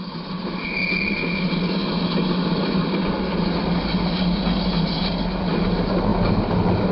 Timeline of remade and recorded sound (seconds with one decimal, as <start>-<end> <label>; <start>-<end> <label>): 0.0-6.9 recorded